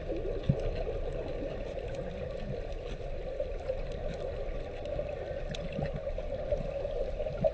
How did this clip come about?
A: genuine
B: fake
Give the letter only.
A